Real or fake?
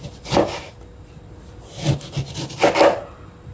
real